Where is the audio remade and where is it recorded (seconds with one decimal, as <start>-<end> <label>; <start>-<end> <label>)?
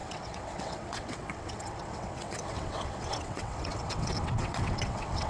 0.0-5.3 remade